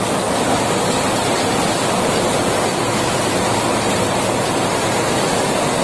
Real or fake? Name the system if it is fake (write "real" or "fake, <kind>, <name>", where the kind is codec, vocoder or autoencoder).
real